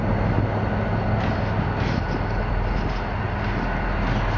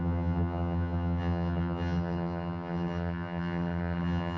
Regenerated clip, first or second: second